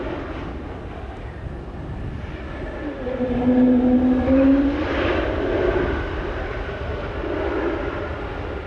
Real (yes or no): yes